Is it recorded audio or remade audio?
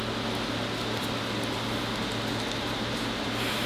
recorded